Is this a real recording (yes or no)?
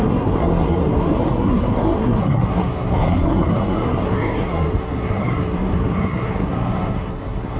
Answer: no